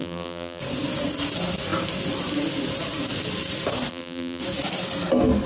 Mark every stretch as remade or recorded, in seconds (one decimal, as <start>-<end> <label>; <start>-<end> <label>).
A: 0.0-0.6 remade; 0.6-3.9 recorded; 3.9-4.4 remade; 4.4-5.5 recorded